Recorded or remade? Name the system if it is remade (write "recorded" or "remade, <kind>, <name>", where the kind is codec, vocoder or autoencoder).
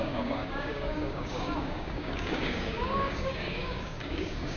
remade, codec, DAC